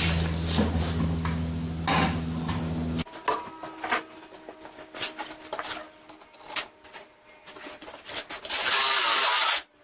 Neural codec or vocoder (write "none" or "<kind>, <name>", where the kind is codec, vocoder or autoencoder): none